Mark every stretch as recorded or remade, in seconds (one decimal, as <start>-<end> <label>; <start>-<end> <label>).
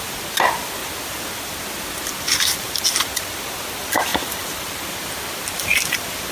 0.0-6.3 recorded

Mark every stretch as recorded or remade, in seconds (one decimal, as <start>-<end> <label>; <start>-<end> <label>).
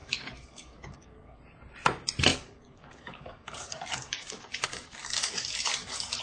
0.0-1.4 remade; 1.4-2.3 recorded; 2.3-6.2 remade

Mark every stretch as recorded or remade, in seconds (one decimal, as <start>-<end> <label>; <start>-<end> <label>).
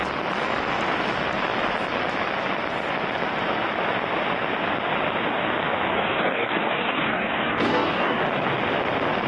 0.0-5.9 recorded; 5.9-8.2 remade; 8.2-9.3 recorded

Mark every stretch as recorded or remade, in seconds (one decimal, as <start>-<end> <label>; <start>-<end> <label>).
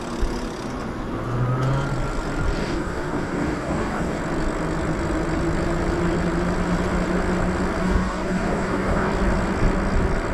0.0-2.6 recorded; 2.6-4.2 remade; 4.2-7.8 recorded; 7.8-9.1 remade; 9.1-10.3 recorded